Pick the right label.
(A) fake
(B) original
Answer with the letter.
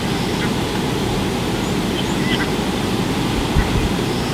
B